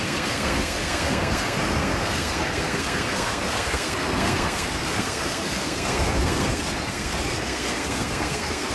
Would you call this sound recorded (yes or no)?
no